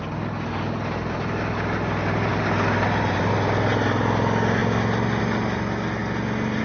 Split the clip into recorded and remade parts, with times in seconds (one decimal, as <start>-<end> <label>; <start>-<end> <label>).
0.0-2.3 recorded; 2.3-3.3 remade; 3.3-6.6 recorded